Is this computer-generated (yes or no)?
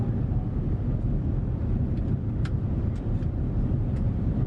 no